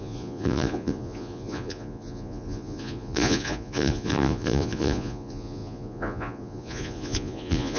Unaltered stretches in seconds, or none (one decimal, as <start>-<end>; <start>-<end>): none